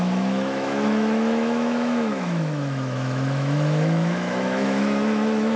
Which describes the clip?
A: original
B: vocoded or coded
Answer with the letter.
B